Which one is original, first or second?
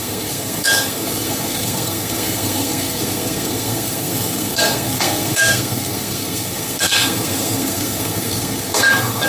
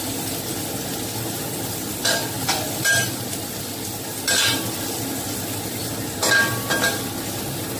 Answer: second